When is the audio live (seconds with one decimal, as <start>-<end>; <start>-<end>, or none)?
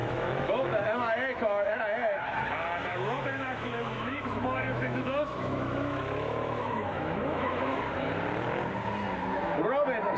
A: 1.8-2.9; 7.8-10.2